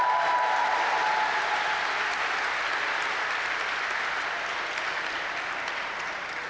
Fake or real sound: real